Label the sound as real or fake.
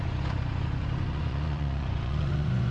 fake